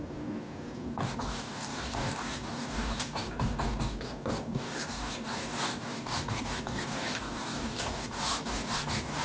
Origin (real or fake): fake